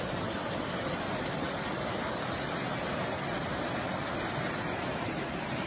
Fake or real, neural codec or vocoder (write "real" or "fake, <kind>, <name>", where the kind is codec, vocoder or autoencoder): real